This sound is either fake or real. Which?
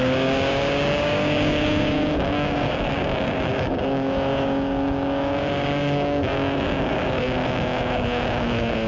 fake